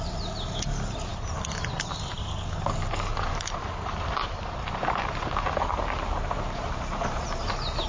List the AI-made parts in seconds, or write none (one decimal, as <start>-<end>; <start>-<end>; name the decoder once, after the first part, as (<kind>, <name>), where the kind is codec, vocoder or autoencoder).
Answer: 3.1-7.5 (vocoder, BigVGAN v2)